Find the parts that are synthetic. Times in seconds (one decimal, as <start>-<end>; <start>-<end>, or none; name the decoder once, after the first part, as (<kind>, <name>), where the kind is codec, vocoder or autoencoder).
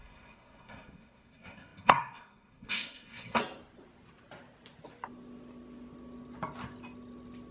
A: 0.0-3.4 (codec, SNAC)